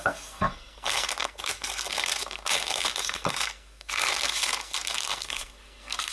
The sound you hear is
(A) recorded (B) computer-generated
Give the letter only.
B